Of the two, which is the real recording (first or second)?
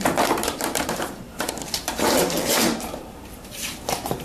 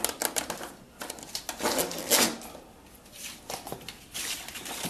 second